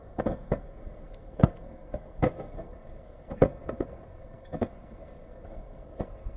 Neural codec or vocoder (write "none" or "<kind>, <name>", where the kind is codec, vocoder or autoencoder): codec, SNAC